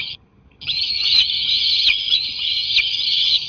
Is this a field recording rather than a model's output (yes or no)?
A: no